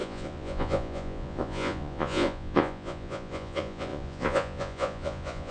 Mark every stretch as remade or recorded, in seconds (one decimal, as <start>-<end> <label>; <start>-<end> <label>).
0.0-5.5 remade